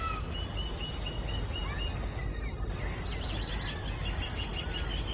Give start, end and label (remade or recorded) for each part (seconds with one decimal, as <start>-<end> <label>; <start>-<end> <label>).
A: 0.0-5.1 recorded